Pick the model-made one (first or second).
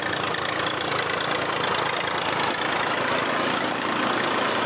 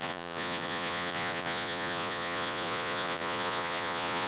second